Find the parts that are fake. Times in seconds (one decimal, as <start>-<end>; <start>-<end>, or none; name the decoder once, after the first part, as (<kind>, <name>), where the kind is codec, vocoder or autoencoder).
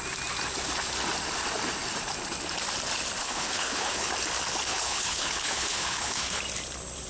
3.2-4.1 (codec, HILCodec); 4.7-6.4